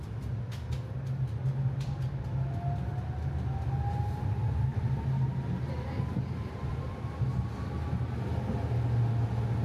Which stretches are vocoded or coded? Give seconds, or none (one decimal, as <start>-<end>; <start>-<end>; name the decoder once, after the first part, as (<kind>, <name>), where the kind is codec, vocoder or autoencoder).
4.7-7.0 (vocoder, BigVGAN v2)